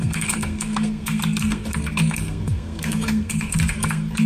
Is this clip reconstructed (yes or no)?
yes